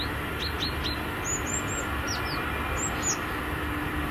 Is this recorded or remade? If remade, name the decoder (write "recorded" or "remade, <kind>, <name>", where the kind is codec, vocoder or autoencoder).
recorded